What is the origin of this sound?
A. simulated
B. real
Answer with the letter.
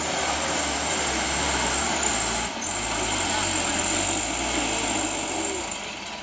B